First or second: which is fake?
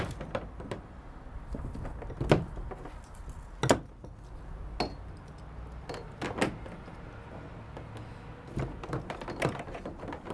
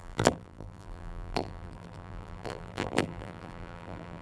second